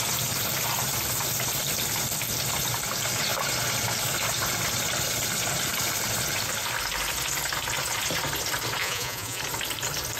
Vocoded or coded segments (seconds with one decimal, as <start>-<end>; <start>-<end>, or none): 8.8-9.4